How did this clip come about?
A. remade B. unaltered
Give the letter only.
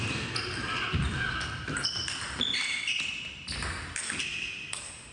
B